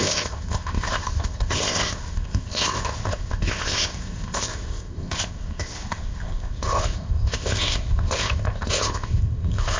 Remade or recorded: remade